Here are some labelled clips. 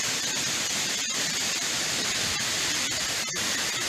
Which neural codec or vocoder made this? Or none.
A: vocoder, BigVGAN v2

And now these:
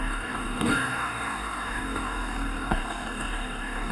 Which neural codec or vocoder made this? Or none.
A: codec, DAC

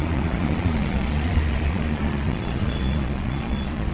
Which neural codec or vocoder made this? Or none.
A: vocoder, Vocos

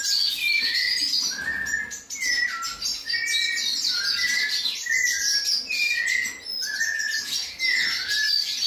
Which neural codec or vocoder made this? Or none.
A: none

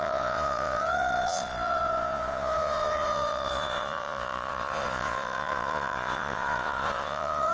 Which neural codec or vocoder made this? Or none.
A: vocoder, Vocos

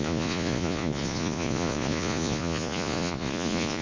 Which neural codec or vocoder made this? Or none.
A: vocoder, Vocos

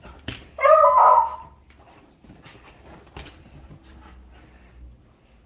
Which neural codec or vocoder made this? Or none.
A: none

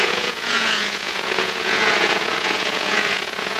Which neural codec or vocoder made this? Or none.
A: vocoder, Vocos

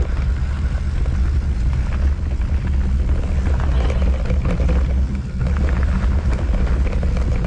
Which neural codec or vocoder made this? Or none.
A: none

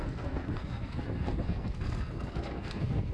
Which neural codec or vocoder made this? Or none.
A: codec, SNAC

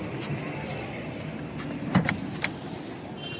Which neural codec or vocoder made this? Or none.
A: none